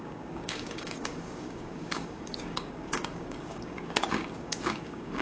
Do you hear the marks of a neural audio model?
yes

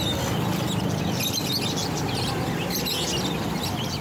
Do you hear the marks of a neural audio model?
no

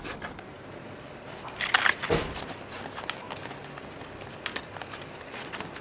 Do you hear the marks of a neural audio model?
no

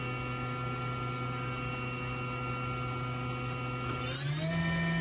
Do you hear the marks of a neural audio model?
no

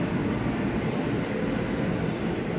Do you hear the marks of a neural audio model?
no